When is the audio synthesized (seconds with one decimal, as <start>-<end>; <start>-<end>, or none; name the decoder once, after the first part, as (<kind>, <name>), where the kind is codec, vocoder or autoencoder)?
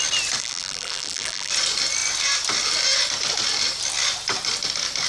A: 0.4-1.5 (vocoder, BigVGAN v2)